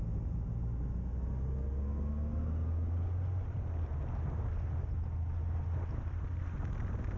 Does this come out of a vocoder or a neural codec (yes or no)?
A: no